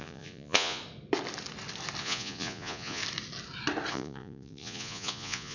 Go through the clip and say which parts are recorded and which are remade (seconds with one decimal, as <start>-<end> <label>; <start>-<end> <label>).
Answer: 0.0-0.8 remade; 0.8-2.0 recorded; 2.0-3.0 remade; 3.0-3.9 recorded; 3.9-5.5 remade